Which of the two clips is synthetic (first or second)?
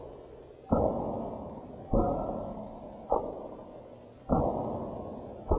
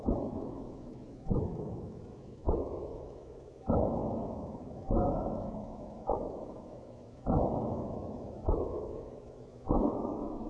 second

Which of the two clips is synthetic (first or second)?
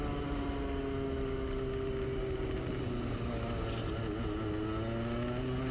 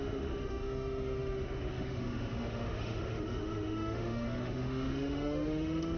second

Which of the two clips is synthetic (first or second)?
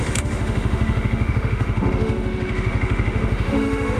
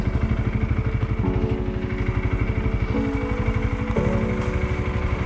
first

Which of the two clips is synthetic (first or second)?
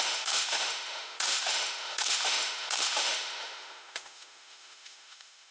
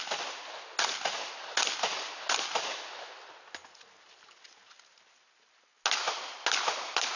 first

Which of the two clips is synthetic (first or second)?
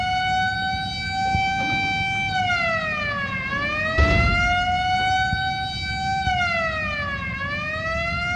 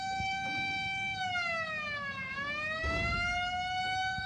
second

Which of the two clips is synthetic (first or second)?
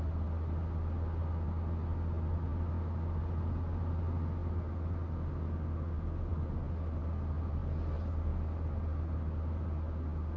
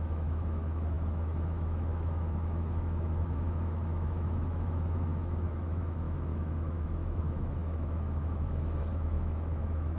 second